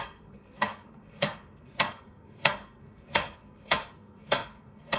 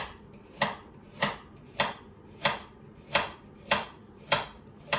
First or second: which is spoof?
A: first